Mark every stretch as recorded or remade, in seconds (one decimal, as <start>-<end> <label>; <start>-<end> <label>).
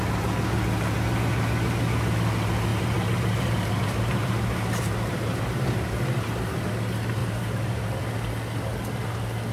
0.0-2.7 recorded; 2.7-6.7 remade; 6.7-7.2 recorded; 7.2-8.0 remade; 8.0-9.5 recorded